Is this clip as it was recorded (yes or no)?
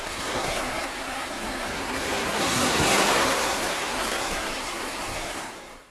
no